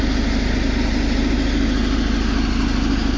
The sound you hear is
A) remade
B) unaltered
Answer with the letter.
B